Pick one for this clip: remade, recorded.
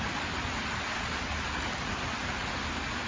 recorded